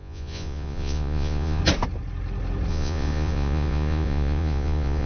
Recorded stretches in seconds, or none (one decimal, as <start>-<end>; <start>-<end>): 1.6-2.7